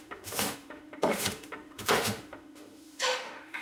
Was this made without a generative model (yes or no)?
no